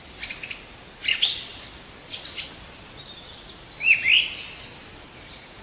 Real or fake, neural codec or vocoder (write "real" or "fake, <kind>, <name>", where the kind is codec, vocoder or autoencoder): real